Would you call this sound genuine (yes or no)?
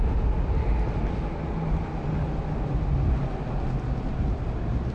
yes